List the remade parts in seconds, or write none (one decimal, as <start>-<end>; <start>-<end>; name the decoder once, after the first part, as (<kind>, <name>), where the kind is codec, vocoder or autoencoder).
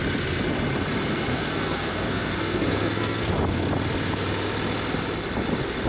1.3-3.3 (codec, SNAC)